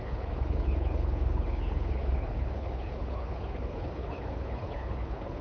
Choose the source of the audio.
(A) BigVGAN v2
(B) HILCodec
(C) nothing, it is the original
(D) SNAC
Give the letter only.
B